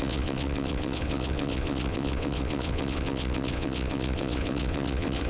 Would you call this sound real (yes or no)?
no